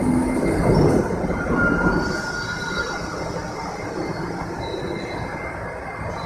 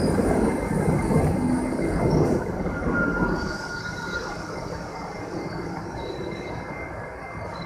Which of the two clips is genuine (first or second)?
first